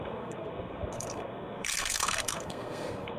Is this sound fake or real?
fake